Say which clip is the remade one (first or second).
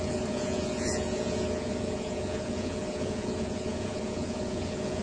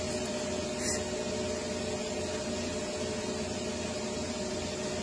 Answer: first